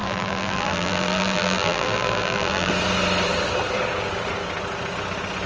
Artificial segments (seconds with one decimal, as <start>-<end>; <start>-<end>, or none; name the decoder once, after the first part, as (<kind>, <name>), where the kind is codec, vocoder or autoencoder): 0.0-2.7 (vocoder, BigVGAN v2)